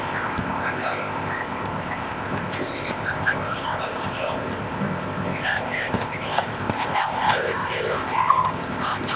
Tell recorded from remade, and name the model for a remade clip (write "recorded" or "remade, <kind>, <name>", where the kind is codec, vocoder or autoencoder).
remade, codec, ZipCodec